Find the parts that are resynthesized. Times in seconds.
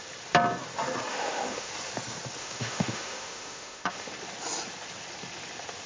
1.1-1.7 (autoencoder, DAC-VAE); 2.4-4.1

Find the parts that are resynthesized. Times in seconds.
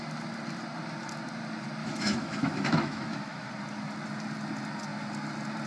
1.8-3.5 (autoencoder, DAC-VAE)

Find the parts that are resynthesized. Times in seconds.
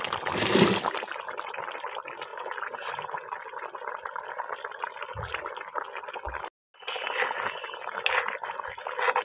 none